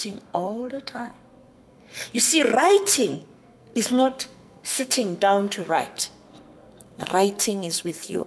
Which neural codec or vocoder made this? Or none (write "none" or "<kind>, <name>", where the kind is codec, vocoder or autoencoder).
codec, SNAC